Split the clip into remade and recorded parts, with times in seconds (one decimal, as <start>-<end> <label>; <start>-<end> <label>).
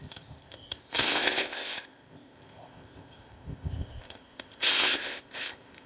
0.0-5.9 remade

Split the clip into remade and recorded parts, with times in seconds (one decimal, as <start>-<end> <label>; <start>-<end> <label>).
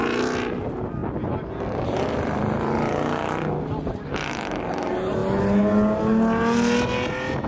0.0-7.5 recorded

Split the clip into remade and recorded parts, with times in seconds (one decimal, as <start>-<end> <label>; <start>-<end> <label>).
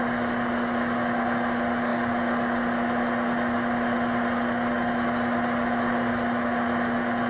0.0-7.3 recorded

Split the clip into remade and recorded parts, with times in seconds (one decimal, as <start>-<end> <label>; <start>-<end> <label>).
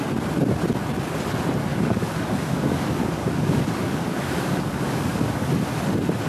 0.0-1.7 recorded; 1.7-5.5 remade; 5.5-6.3 recorded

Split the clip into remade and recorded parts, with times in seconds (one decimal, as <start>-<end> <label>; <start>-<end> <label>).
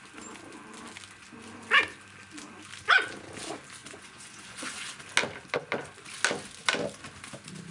0.0-3.8 recorded; 3.8-5.0 remade; 5.0-7.7 recorded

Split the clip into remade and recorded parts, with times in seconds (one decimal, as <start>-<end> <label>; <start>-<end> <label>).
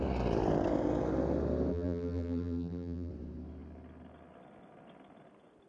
0.0-1.7 recorded; 1.7-3.1 remade; 3.1-5.7 recorded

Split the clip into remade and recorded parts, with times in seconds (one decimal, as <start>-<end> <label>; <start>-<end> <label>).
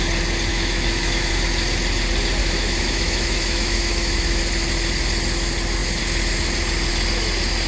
0.0-0.5 recorded; 0.5-1.3 remade; 1.3-2.4 recorded; 2.4-4.4 remade; 4.4-7.7 recorded